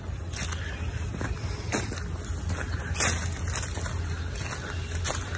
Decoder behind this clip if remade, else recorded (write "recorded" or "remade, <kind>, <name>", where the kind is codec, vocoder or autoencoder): recorded